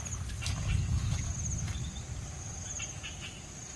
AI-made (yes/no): no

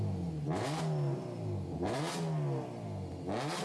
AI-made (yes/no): no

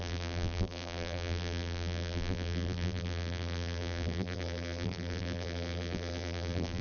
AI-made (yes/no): yes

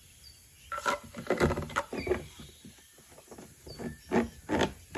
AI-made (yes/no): no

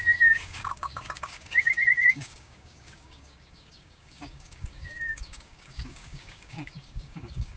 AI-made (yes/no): yes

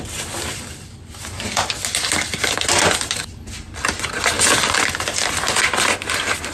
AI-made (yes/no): no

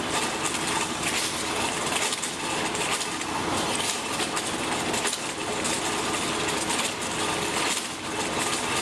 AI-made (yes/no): no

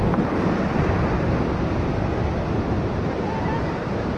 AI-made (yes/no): no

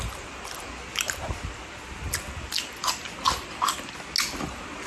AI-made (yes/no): no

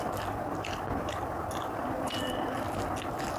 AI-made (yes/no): no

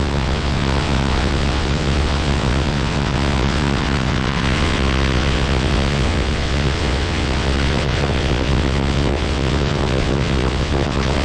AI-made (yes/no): yes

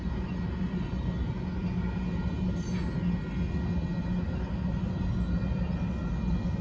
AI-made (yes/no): no